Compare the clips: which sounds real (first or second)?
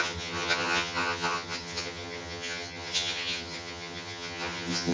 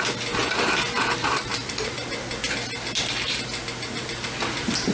second